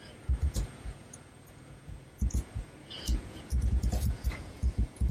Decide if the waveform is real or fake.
fake